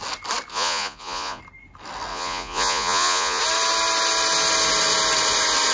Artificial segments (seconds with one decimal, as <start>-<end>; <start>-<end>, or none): 0.5-1.4; 2.1-3.4